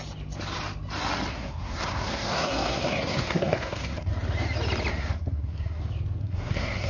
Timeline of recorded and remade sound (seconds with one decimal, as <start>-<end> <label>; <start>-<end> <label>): 0.0-1.3 recorded; 1.3-4.1 remade; 4.1-4.9 recorded; 4.9-5.8 remade; 5.8-6.2 recorded; 6.2-6.9 remade